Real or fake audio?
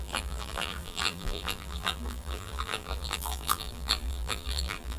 fake